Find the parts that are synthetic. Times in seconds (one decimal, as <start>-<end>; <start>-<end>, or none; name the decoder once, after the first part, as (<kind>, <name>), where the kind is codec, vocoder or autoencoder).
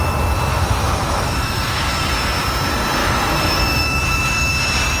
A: 0.5-1.9 (autoencoder, DAC-VAE); 3.0-4.5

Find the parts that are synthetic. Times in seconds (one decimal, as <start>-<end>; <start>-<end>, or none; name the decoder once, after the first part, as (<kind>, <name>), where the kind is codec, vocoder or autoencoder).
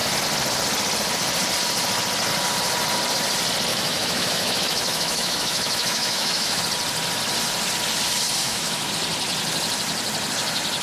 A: 3.7-6.6 (autoencoder, DAC-VAE); 8.4-8.9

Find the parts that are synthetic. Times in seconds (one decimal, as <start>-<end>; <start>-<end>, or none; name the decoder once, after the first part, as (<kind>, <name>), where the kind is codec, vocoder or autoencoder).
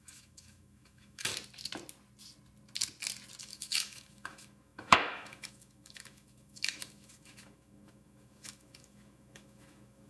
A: 0.0-1.3 (autoencoder, DAC-VAE); 3.4-10.1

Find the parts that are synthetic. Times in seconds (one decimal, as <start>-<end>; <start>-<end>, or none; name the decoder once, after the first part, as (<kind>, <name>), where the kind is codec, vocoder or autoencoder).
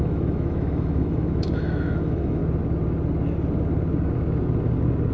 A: 0.0-2.4 (autoencoder, DAC-VAE)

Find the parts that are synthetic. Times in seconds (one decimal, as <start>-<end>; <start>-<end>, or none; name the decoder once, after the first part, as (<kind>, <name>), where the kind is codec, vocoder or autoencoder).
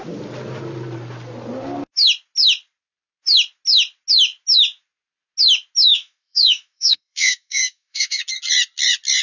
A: 5.9-8.2 (autoencoder, DAC-VAE)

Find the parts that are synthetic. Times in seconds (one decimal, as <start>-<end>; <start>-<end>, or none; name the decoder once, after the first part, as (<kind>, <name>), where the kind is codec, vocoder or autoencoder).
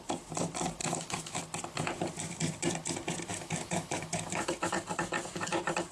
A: 0.8-1.4 (autoencoder, DAC-VAE); 3.3-4.7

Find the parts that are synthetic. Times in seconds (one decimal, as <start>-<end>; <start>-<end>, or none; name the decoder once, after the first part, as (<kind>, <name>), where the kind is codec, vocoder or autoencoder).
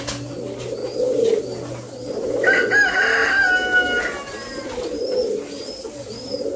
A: none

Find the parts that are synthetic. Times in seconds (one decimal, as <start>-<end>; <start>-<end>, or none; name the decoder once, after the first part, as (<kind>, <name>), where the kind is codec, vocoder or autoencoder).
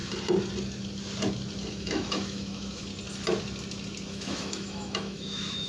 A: 1.7-2.9 (autoencoder, DAC-VAE); 4.1-5.7